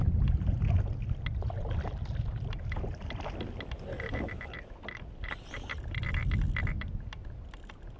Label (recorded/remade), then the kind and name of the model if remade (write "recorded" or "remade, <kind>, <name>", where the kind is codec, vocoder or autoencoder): recorded